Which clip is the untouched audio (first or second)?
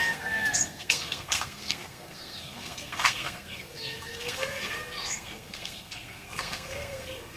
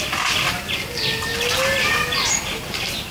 second